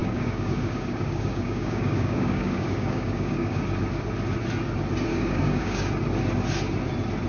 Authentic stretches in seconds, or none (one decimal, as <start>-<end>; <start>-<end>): 3.6-5.1; 5.9-7.3